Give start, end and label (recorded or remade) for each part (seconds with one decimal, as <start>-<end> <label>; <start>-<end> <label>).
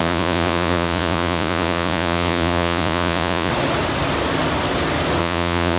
0.0-3.5 remade; 3.5-5.2 recorded; 5.2-5.8 remade